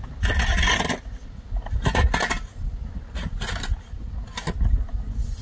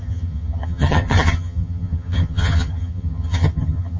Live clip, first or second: first